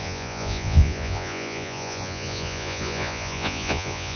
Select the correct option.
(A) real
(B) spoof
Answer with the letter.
B